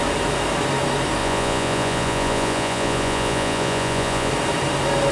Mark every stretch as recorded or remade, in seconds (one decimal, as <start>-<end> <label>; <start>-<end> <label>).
0.0-1.2 recorded; 1.2-4.3 remade; 4.3-5.1 recorded